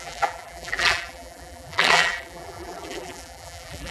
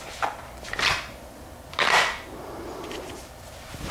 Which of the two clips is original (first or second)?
second